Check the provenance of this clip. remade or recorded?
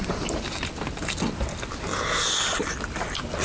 recorded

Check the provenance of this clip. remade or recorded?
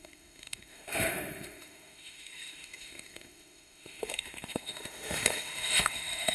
remade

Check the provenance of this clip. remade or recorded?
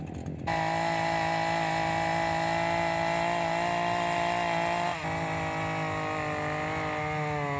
recorded